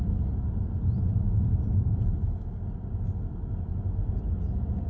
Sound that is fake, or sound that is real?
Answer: real